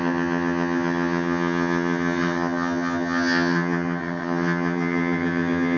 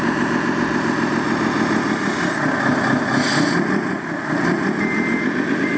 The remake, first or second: first